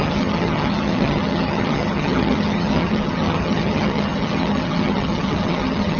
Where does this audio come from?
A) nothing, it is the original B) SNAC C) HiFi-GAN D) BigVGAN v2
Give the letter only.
C